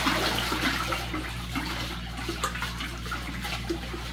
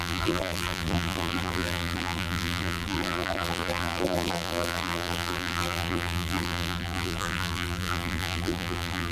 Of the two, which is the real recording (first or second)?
first